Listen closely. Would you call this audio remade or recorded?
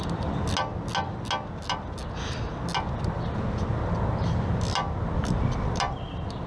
recorded